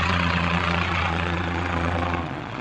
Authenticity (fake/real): fake